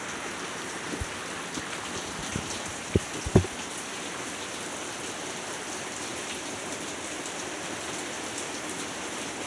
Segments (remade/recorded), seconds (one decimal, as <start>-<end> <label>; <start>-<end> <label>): 0.0-2.3 recorded; 2.3-3.1 remade; 3.1-6.1 recorded; 6.1-6.8 remade; 6.8-9.5 recorded